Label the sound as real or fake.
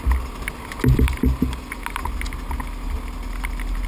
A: real